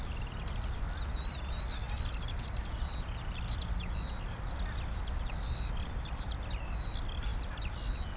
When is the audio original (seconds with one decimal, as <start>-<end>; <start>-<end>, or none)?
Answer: 0.0-8.2